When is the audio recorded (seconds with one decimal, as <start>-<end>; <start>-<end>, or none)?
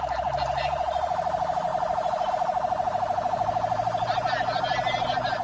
none